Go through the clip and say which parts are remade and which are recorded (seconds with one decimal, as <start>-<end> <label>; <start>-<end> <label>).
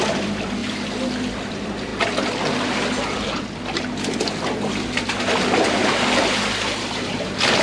0.0-0.6 remade; 0.6-1.3 recorded; 1.3-1.9 remade; 1.9-6.5 recorded; 6.5-7.6 remade